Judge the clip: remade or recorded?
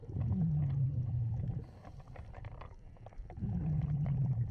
recorded